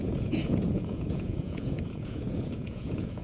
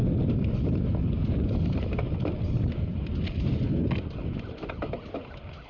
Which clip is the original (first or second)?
second